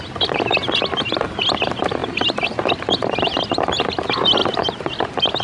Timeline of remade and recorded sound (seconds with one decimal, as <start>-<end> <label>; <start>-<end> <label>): 0.0-5.4 recorded